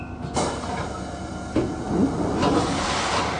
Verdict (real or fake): real